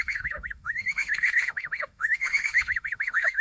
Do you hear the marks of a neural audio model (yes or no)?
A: yes